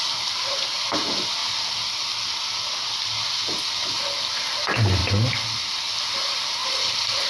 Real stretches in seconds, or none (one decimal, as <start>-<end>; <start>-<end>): 1.4-4.2; 5.0-6.0